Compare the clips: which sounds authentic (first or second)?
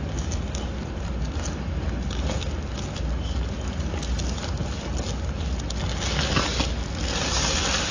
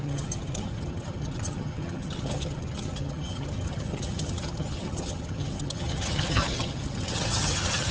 first